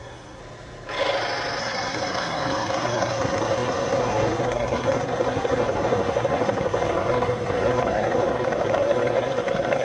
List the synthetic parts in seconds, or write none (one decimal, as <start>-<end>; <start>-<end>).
0.0-0.4; 1.6-9.8